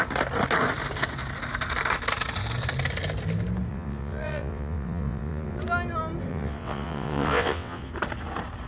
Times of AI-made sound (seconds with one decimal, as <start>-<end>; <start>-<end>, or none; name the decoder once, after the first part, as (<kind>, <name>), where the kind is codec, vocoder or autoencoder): 3.7-5.6 (vocoder, WaveNeXt); 6.3-7.9